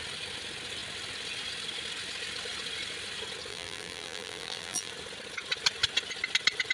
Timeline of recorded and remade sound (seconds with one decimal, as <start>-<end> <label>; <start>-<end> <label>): 0.0-3.5 recorded; 3.5-4.9 remade; 4.9-6.7 recorded